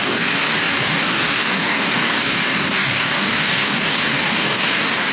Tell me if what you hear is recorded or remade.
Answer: remade